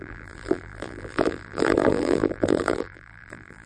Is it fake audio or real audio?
fake